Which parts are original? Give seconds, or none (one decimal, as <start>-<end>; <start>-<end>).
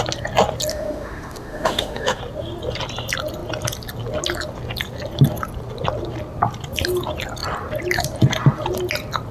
0.0-0.7; 2.2-9.3